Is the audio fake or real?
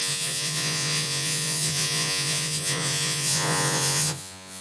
fake